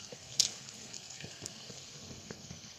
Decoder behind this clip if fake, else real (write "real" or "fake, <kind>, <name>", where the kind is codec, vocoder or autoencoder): fake, codec, SNAC